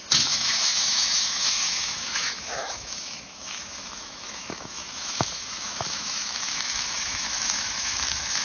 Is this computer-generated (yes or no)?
yes